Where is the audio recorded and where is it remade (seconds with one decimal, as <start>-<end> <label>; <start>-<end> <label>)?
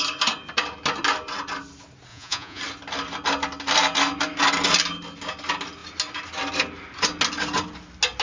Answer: 0.0-2.1 recorded; 2.1-2.6 remade; 2.6-8.2 recorded